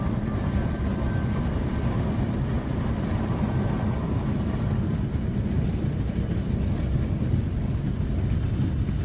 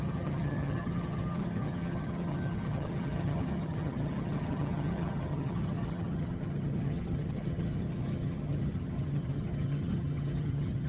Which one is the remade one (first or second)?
second